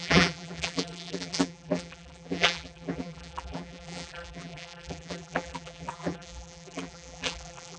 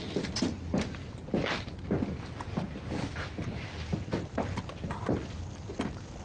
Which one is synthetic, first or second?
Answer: first